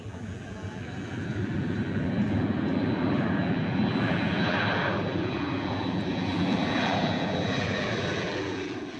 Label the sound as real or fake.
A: fake